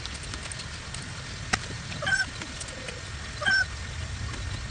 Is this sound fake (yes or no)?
no